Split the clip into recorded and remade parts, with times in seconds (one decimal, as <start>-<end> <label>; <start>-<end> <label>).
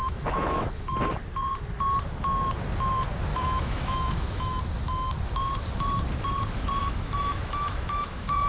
0.0-0.8 remade; 0.8-3.3 recorded; 3.3-4.6 remade; 4.6-6.8 recorded; 6.8-8.5 remade